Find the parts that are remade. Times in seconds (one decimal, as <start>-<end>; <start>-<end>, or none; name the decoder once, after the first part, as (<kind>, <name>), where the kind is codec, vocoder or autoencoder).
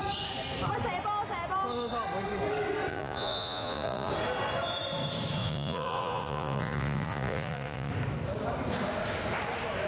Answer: 2.9-4.1 (vocoder, Vocos); 5.4-7.9